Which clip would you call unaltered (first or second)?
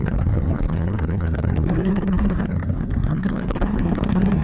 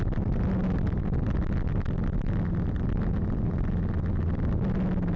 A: second